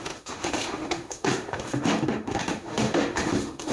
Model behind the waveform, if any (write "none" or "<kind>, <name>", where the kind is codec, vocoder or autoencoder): autoencoder, DAC-VAE